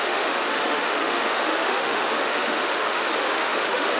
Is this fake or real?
fake